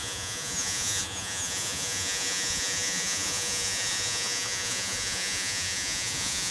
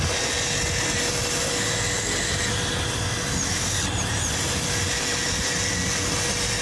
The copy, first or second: first